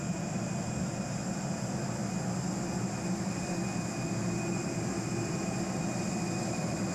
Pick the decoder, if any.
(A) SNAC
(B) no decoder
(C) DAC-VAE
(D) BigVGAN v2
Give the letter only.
B